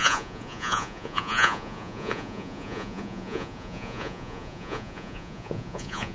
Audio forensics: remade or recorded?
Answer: remade